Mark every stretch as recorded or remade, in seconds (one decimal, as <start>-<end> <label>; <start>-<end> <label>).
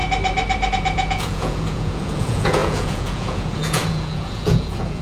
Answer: 0.0-0.7 recorded; 0.7-5.0 remade